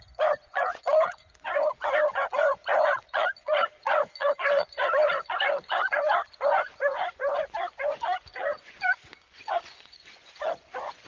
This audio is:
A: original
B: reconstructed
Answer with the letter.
B